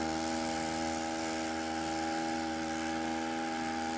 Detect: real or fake real